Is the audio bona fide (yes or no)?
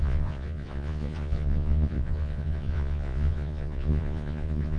no